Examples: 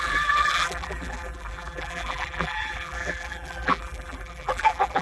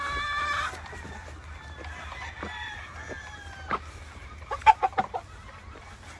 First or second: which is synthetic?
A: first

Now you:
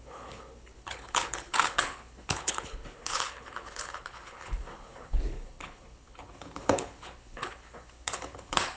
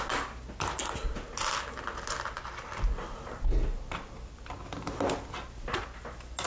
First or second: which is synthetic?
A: first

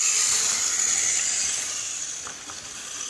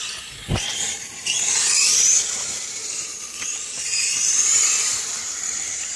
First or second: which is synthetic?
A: second